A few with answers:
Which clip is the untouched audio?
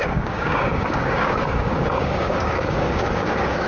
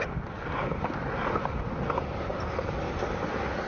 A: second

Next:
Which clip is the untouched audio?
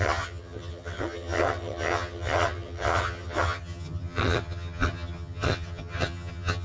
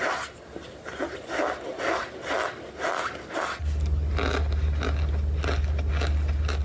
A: second